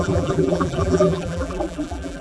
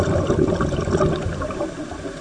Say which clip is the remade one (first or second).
first